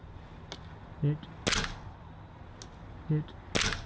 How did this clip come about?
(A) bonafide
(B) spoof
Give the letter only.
A